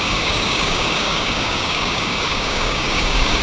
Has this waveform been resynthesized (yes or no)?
yes